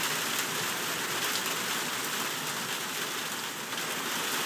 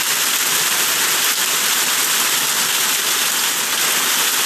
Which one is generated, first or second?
second